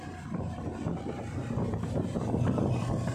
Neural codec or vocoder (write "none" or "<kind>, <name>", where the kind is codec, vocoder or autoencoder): vocoder, BigVGAN v2